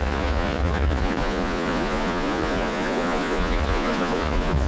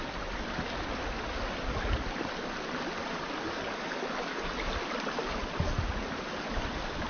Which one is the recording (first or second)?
second